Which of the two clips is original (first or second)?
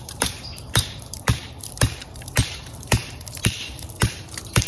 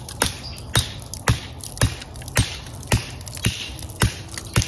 second